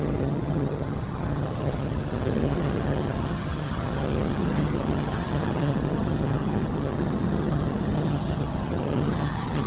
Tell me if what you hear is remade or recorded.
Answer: remade